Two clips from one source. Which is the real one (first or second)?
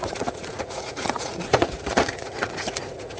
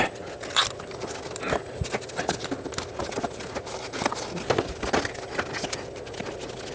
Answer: second